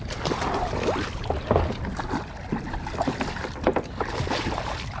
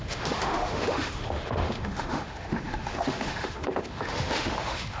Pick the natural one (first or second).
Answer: first